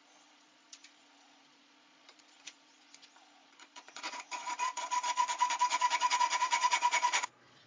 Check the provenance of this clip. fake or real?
fake